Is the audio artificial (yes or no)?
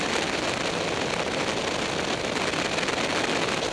no